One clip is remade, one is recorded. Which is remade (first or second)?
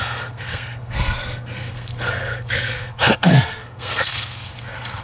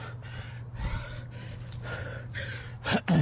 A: first